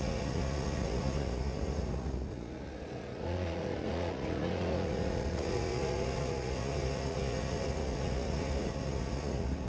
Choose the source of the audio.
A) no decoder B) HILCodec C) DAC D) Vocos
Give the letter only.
D